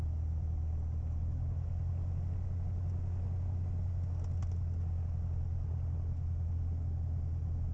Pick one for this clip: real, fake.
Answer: real